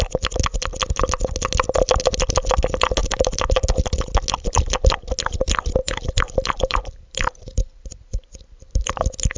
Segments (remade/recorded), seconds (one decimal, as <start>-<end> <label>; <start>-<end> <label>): 0.0-3.0 recorded; 3.0-3.6 remade; 3.6-5.8 recorded; 5.8-8.8 remade; 8.8-9.4 recorded